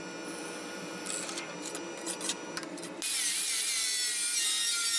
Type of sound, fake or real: real